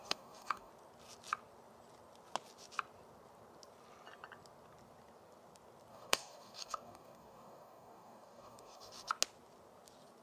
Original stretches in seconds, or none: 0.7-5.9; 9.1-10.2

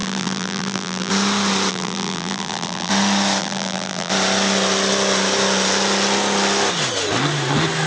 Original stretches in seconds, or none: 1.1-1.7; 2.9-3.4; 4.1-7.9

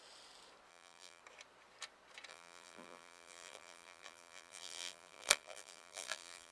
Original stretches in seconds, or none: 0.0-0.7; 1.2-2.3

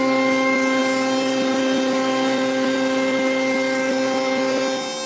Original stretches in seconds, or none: 0.0-5.1